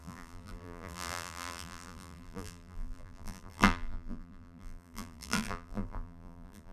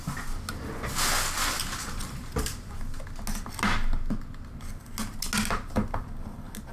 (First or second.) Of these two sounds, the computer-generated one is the first